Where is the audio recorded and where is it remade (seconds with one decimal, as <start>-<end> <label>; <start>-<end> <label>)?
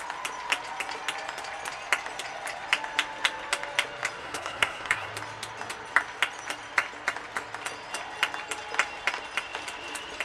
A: 0.0-4.2 recorded; 4.2-5.1 remade; 5.1-10.2 recorded